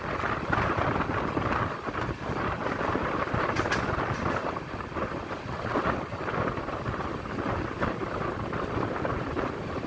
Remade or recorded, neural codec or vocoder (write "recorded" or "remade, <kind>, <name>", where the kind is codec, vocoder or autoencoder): recorded